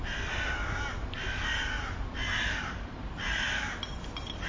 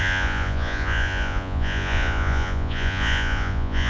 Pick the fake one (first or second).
second